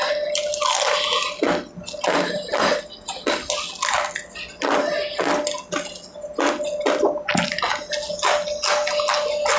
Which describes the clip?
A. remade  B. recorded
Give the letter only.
B